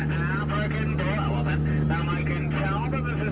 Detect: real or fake real